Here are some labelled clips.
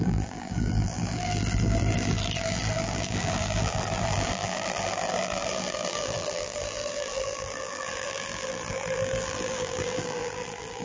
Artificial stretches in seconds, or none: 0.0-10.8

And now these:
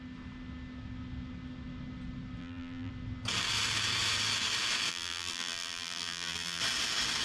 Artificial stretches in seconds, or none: 2.4-2.9; 4.9-6.6

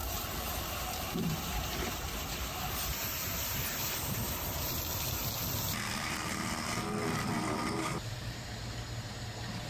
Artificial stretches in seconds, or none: 0.0-4.8; 7.9-8.5

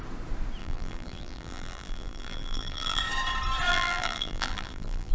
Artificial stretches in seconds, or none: 0.6-3.0; 3.7-5.1